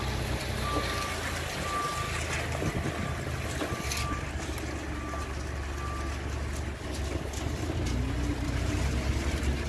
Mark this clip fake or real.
real